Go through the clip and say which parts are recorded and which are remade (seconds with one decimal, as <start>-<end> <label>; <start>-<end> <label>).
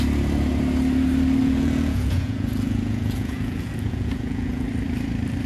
0.0-1.4 recorded; 1.4-4.7 remade; 4.7-5.5 recorded